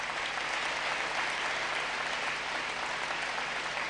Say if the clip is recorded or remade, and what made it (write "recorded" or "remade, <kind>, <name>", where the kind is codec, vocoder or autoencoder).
recorded